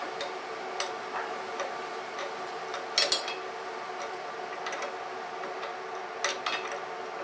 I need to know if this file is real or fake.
real